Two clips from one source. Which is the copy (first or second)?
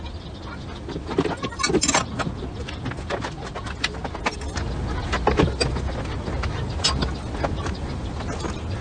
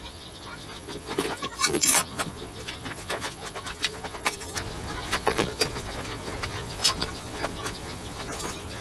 second